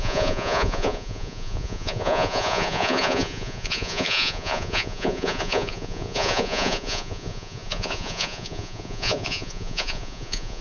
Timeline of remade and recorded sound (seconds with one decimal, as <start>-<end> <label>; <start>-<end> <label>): 0.0-10.6 remade